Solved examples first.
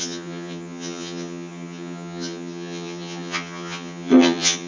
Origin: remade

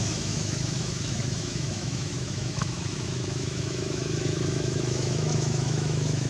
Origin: remade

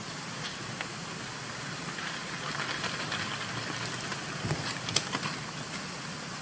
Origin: recorded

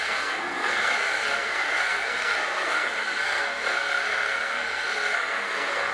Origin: remade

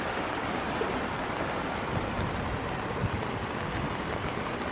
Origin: recorded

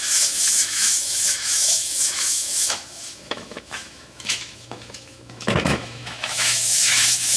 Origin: remade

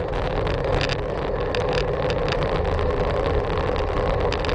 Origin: recorded